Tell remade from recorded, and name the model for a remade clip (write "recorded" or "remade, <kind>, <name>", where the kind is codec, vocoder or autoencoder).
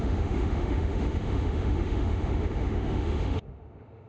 remade, autoencoder, DAC-VAE